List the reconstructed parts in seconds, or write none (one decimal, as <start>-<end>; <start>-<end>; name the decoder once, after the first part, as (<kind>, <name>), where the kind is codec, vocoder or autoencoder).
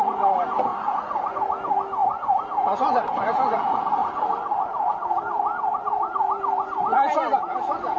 4.0-6.8 (vocoder, BigVGAN v2)